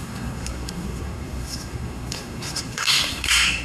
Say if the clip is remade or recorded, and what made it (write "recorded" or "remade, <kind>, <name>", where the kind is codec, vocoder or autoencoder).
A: remade, codec, SNAC